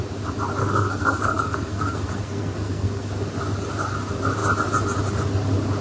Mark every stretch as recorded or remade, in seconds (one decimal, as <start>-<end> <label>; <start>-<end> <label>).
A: 0.0-0.6 recorded; 0.6-3.1 remade; 3.1-5.8 recorded